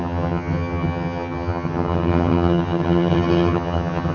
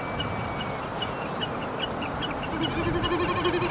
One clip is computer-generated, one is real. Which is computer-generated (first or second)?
first